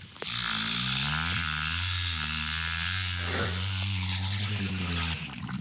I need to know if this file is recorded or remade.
recorded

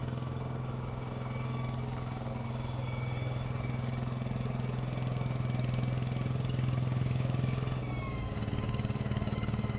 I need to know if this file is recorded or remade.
remade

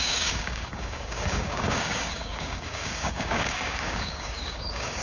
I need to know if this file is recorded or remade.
remade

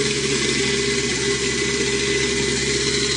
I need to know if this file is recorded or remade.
recorded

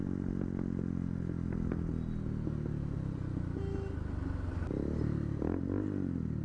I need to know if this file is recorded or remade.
recorded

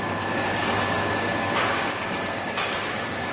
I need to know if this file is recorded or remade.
remade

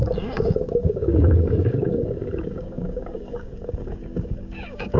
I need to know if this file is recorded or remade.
remade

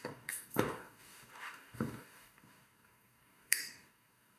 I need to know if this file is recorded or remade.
remade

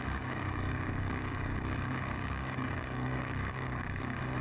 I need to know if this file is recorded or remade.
remade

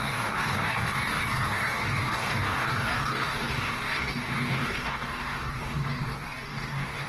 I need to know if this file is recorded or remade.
remade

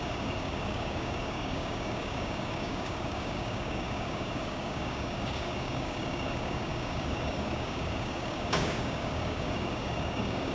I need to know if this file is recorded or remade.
remade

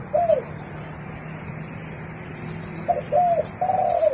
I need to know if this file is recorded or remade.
recorded